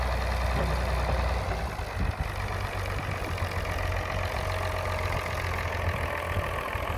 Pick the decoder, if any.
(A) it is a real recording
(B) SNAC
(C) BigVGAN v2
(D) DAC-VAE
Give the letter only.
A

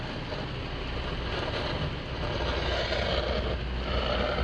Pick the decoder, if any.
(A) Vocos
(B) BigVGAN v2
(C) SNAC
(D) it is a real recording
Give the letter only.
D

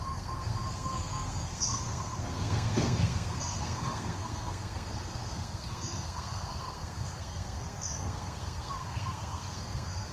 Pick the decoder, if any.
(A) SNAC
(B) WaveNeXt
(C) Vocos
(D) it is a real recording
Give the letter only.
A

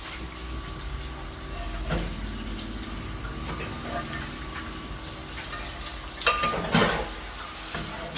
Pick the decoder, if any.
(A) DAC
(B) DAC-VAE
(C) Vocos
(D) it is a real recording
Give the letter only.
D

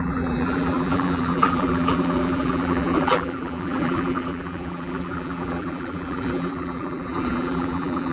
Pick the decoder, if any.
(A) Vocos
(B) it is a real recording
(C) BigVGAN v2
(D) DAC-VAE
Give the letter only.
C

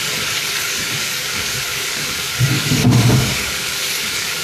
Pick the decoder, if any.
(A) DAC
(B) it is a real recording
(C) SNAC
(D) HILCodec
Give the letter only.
A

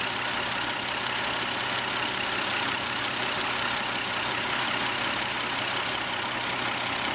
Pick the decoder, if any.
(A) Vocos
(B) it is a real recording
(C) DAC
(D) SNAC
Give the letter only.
B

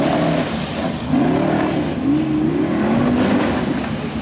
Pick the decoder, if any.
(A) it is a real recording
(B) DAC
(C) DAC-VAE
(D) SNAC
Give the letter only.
A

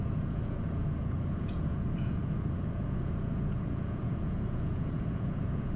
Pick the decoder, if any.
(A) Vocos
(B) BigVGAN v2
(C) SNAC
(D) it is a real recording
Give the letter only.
A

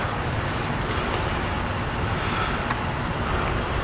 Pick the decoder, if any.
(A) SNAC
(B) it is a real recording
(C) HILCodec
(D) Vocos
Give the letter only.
B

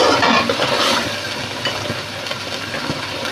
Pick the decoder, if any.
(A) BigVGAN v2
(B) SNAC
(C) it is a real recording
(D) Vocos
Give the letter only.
C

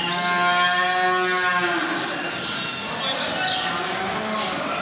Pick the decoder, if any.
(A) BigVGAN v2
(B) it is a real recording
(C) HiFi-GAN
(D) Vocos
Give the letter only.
B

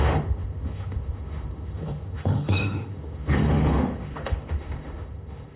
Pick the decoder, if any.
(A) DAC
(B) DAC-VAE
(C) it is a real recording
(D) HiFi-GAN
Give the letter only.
B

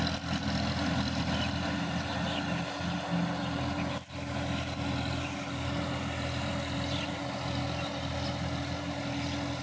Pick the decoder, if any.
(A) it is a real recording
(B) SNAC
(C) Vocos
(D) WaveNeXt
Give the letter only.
A